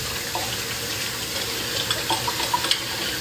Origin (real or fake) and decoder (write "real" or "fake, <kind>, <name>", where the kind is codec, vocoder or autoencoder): real